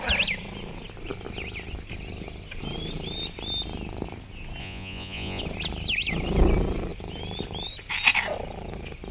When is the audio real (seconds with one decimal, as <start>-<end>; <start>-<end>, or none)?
0.0-4.6; 5.4-9.1